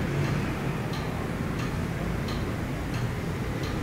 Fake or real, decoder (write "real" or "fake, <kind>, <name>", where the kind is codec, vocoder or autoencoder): real